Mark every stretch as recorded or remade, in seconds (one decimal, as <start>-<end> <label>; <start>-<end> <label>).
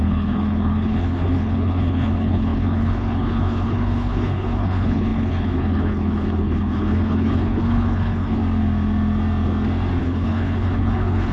0.0-8.4 remade; 8.4-10.0 recorded; 10.0-11.3 remade